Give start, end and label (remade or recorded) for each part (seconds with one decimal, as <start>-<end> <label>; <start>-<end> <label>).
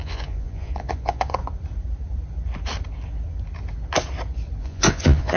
0.0-1.4 remade; 1.4-4.6 recorded; 4.6-5.4 remade